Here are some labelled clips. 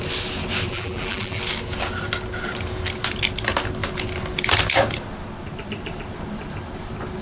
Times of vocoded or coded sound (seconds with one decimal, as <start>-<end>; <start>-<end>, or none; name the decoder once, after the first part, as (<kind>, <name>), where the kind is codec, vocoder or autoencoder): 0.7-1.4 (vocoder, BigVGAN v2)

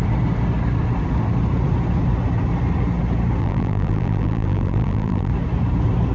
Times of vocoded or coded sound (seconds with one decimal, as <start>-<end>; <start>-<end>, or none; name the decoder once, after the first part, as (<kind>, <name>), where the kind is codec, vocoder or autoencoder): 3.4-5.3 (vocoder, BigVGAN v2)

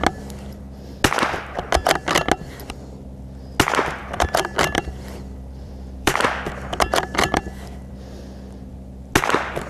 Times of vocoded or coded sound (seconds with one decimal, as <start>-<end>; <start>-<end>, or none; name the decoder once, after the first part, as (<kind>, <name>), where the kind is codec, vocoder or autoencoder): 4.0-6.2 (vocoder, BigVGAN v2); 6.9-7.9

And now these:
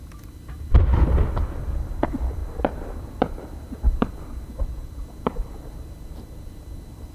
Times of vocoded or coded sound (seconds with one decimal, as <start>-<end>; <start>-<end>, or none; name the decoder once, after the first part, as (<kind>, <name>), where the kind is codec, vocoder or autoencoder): 0.0-7.1 (vocoder, BigVGAN v2)